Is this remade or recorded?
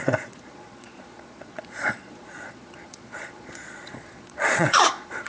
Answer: remade